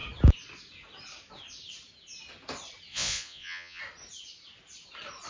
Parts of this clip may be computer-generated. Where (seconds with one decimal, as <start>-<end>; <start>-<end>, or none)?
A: 2.9-3.8